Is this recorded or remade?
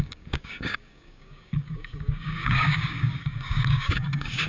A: remade